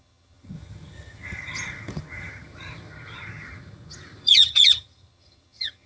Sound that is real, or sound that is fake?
fake